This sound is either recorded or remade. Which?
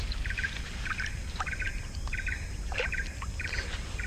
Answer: remade